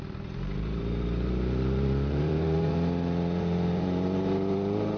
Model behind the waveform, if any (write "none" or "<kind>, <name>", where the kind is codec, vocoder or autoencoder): vocoder, BigVGAN v2